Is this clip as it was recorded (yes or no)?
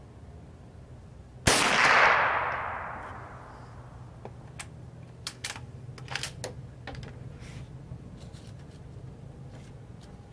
yes